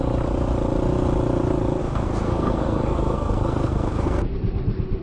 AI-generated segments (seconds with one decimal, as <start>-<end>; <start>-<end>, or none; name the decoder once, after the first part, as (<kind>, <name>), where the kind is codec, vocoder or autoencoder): 1.8-4.3 (codec, SNAC)